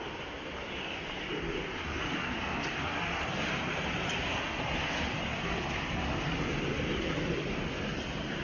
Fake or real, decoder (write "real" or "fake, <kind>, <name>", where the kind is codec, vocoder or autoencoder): real